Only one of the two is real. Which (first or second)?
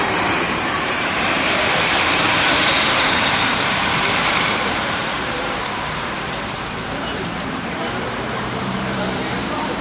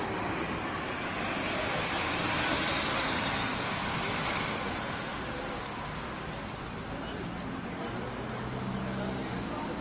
second